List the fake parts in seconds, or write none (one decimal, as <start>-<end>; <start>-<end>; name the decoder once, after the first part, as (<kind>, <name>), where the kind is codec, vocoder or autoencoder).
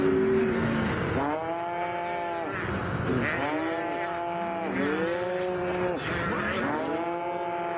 none